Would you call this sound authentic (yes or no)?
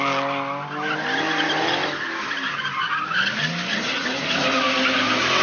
yes